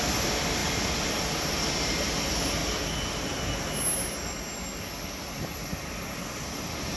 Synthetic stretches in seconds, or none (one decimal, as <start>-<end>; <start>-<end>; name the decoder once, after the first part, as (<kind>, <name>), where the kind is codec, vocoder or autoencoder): none